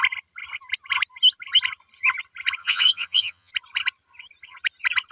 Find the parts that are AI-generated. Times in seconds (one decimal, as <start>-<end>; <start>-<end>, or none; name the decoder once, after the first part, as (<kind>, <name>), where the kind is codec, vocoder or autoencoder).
2.6-3.5 (vocoder, HiFi-GAN)

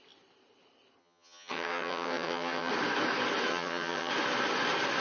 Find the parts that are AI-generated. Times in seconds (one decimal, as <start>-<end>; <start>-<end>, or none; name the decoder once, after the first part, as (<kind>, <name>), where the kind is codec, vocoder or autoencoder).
1.0-2.7 (vocoder, HiFi-GAN); 3.5-4.1

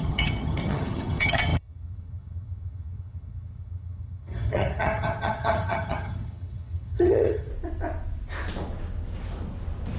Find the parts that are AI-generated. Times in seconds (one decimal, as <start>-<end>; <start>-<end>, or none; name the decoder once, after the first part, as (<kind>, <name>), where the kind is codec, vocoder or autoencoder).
0.0-7.5 (vocoder, HiFi-GAN)

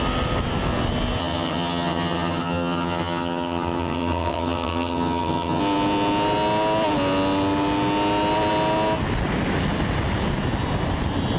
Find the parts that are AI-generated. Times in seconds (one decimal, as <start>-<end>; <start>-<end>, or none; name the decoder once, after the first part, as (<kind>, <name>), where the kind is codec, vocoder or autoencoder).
1.2-5.6 (vocoder, HiFi-GAN)

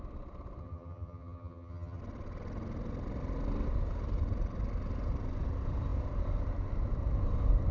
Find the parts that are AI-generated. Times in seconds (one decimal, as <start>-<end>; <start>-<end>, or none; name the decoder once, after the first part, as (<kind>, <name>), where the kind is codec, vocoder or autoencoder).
0.6-2.0 (vocoder, HiFi-GAN)

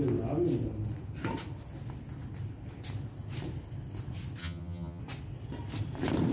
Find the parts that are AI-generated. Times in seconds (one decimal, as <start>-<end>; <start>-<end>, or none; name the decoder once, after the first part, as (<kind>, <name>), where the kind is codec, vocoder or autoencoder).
4.4-5.0 (vocoder, HiFi-GAN)